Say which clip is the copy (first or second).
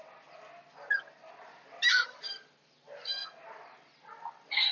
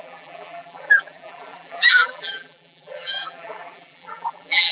second